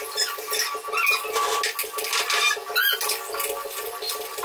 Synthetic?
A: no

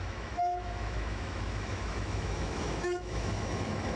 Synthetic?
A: yes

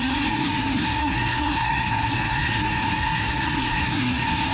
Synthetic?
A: yes